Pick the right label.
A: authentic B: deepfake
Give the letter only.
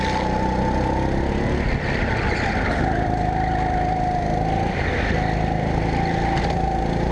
A